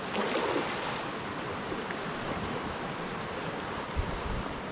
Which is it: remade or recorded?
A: recorded